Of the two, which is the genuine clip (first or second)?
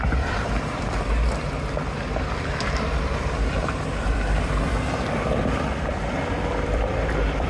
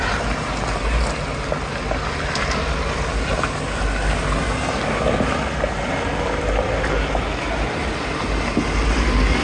second